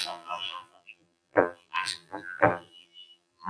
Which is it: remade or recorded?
remade